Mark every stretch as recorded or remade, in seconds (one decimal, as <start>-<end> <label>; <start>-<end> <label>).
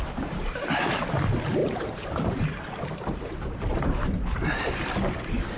0.0-1.6 recorded; 1.6-2.4 remade; 2.4-3.7 recorded; 3.7-4.7 remade; 4.7-5.6 recorded